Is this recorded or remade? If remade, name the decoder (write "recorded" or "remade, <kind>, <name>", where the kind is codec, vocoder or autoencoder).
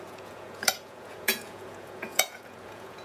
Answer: remade, vocoder, Vocos